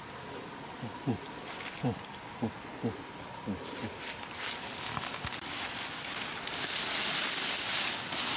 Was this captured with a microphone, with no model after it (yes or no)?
yes